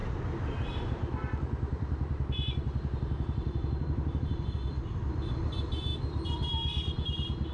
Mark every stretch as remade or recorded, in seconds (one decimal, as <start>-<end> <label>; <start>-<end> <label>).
0.0-4.5 remade; 4.5-7.5 recorded